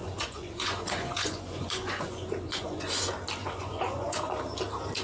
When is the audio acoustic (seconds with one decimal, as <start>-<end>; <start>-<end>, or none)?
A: 3.0-3.4; 4.3-5.0